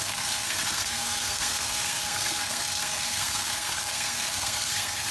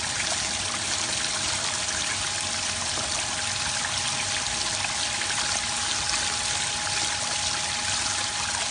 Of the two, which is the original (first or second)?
second